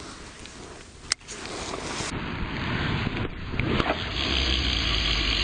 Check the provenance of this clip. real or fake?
real